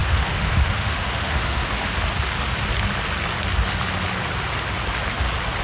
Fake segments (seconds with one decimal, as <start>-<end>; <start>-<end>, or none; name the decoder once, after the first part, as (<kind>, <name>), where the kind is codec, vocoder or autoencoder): 0.0-1.8 (autoencoder, DAC-VAE)